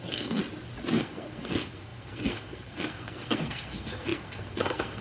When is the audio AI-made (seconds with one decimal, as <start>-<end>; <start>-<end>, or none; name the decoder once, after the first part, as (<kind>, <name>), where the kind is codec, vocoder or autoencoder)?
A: 0.0-0.4 (codec, SNAC); 0.9-5.0